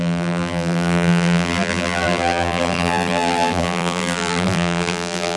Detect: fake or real fake